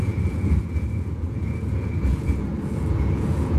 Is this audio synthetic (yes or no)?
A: yes